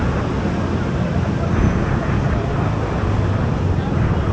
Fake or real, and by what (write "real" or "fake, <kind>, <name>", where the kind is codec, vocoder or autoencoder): real